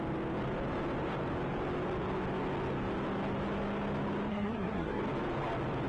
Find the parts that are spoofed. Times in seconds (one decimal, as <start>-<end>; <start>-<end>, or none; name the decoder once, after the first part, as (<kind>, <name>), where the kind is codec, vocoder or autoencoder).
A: 4.3-5.0 (codec, SNAC)